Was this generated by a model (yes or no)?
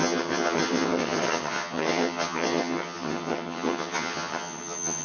yes